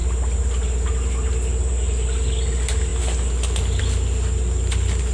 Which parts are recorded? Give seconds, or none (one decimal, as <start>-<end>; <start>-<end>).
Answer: 0.0-5.1